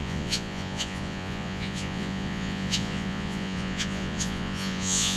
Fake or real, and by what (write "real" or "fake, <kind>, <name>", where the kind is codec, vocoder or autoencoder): fake, vocoder, Vocos